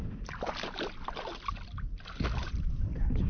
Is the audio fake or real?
real